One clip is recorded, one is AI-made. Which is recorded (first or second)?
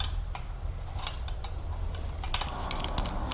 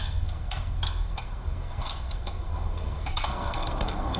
first